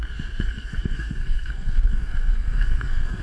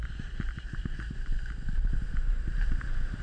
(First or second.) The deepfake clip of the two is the first